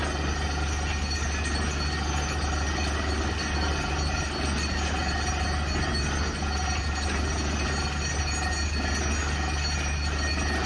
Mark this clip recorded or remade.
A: recorded